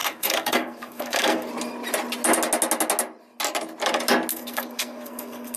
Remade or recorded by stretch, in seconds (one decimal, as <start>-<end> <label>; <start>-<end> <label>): 0.0-1.5 remade; 1.5-4.3 recorded; 4.3-5.6 remade